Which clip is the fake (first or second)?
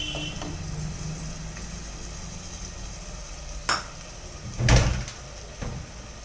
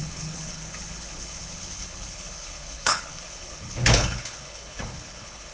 second